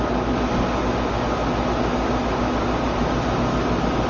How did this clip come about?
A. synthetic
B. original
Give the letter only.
B